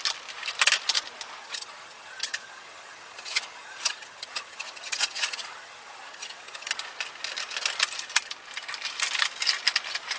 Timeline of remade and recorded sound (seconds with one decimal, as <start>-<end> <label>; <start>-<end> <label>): 0.0-1.4 recorded; 1.4-6.7 remade; 6.7-10.2 recorded